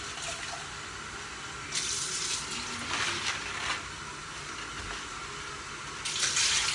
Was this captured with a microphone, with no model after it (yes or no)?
yes